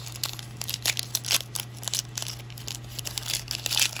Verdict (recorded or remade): recorded